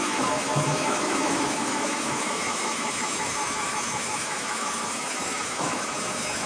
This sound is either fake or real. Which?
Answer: fake